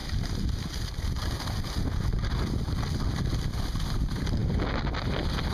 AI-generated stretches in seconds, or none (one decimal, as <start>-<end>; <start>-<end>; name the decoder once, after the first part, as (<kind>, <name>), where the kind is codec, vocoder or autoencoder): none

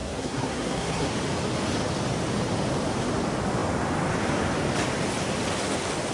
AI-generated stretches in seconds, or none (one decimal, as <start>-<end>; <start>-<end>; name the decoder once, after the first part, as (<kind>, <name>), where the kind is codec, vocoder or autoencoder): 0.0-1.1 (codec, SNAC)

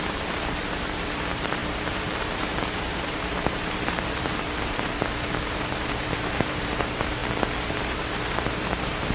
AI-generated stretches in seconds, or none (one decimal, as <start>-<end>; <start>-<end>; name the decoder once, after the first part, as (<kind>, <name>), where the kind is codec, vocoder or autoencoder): 0.0-7.2 (vocoder, BigVGAN v2); 7.7-9.1

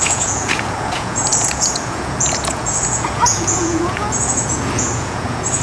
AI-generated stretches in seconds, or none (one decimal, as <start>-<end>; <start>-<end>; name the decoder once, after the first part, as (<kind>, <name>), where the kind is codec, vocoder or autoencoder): 0.0-5.6 (vocoder, Vocos)

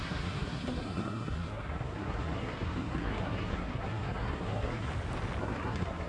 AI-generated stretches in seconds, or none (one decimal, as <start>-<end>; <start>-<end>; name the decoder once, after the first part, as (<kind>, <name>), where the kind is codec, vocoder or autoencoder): 0.0-4.9 (codec, SNAC); 5.4-6.1

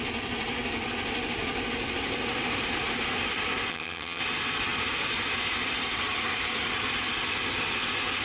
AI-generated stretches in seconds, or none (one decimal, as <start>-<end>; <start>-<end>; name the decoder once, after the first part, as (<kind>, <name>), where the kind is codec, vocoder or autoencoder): 3.7-4.2 (vocoder, HiFi-GAN)

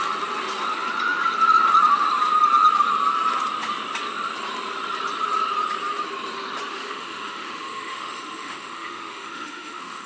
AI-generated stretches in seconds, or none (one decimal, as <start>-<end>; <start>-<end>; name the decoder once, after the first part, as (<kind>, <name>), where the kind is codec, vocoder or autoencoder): 6.7-10.1 (autoencoder, DAC-VAE)